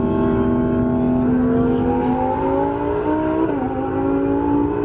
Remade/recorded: recorded